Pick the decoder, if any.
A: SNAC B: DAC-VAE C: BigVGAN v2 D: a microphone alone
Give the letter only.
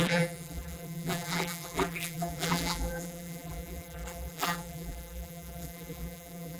C